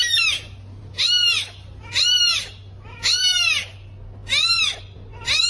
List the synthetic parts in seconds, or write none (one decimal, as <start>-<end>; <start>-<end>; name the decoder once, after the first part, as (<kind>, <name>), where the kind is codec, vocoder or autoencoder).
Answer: none